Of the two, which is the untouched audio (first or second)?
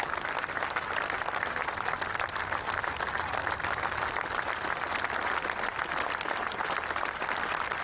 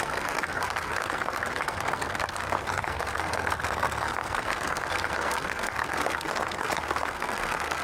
first